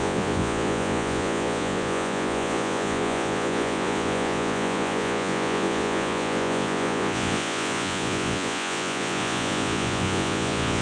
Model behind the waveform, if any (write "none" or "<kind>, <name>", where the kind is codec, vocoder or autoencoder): vocoder, Vocos